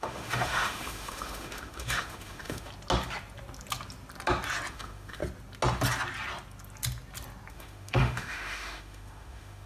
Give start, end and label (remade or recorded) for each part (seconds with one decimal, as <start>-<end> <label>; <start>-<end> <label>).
0.0-2.7 remade; 2.7-4.7 recorded; 4.7-5.2 remade; 5.2-7.5 recorded; 7.5-9.7 remade